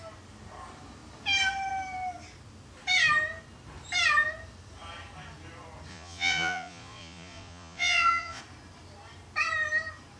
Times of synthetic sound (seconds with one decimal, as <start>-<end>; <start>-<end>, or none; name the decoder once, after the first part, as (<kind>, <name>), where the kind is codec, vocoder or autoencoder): 5.9-8.4 (vocoder, Vocos)